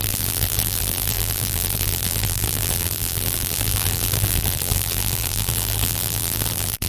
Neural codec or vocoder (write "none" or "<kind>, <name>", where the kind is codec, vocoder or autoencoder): vocoder, BigVGAN v2